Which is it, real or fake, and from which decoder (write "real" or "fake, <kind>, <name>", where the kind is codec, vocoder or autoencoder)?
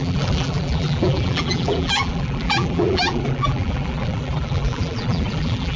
fake, vocoder, BigVGAN v2